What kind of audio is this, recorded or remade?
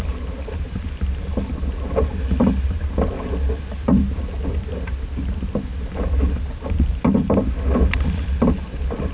recorded